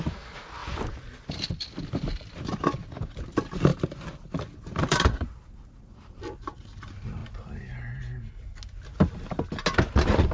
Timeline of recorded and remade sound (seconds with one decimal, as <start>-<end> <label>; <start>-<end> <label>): 0.0-0.6 recorded; 0.6-1.5 remade; 1.5-3.7 recorded; 3.7-6.2 remade; 6.2-10.3 recorded